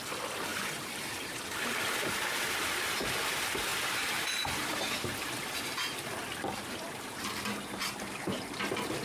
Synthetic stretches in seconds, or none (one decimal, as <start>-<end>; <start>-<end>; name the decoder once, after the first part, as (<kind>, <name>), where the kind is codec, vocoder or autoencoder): 0.5-1.4 (vocoder, BigVGAN v2); 3.7-5.6; 7.8-8.6